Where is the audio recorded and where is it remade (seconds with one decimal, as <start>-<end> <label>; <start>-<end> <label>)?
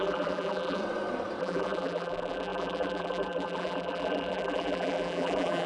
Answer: 0.0-0.8 remade; 0.8-1.4 recorded; 1.4-5.7 remade